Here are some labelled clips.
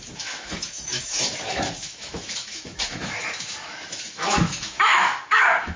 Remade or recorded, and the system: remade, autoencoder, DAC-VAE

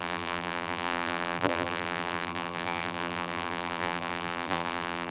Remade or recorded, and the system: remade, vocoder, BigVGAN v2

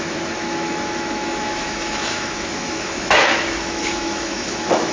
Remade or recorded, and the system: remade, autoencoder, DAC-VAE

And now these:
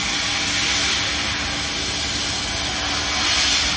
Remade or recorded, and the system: recorded